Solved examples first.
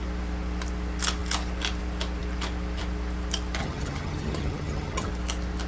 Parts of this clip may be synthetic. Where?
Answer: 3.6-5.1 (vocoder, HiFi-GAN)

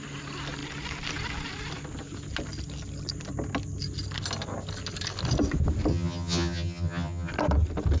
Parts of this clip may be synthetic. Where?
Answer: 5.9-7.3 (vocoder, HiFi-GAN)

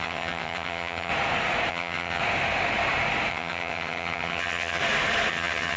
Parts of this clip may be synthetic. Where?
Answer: 0.0-1.1 (vocoder, HiFi-GAN); 1.7-2.2; 3.3-4.8; 5.3-5.8

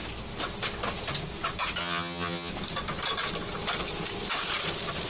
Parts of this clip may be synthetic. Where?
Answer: 1.8-2.5 (vocoder, HiFi-GAN)

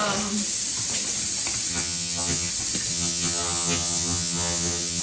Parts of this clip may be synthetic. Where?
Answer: 1.7-2.5 (vocoder, HiFi-GAN); 2.9-5.0

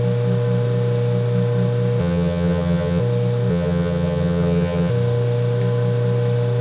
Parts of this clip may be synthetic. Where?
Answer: 2.0-3.0 (vocoder, HiFi-GAN); 3.5-4.9